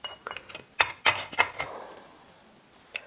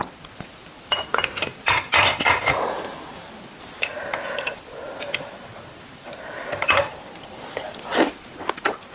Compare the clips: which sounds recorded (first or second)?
first